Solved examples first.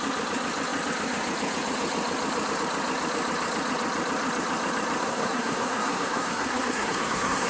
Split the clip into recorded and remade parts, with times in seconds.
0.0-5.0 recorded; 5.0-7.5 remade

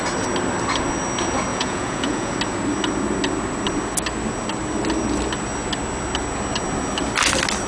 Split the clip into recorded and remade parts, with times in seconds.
0.0-1.5 recorded; 1.5-2.3 remade; 2.3-7.7 recorded

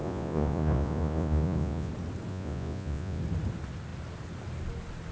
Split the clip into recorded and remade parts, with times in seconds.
0.0-1.9 remade; 1.9-2.3 recorded; 2.3-3.2 remade; 3.2-5.1 recorded

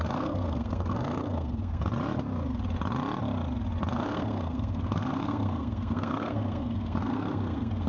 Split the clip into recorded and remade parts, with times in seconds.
0.0-1.9 remade; 1.9-3.9 recorded; 3.9-7.9 remade

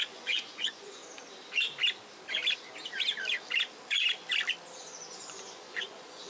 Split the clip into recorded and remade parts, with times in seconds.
0.0-1.0 remade; 1.0-4.8 recorded; 4.8-6.3 remade

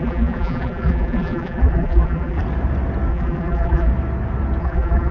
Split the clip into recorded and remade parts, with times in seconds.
0.0-2.4 remade; 2.4-3.1 recorded; 3.1-3.9 remade; 3.9-4.6 recorded; 4.6-5.1 remade